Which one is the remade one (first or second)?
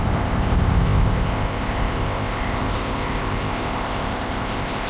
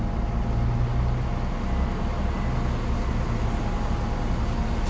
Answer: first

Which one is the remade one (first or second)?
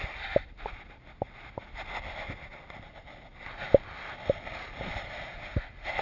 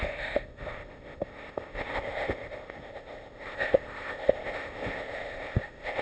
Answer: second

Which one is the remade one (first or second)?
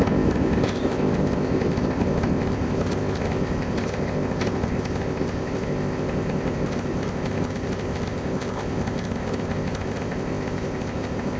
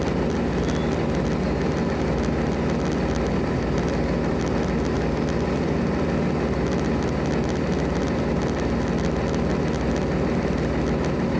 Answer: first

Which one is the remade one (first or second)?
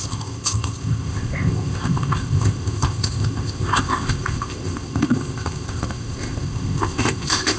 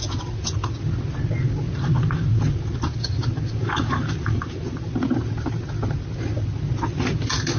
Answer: first